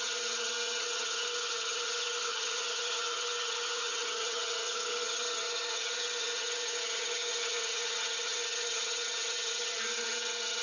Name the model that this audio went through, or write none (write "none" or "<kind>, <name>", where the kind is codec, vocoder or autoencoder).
vocoder, HiFi-GAN